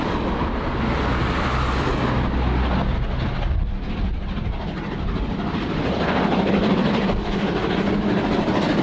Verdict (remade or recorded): recorded